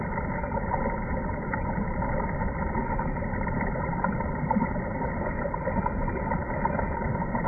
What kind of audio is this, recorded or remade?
remade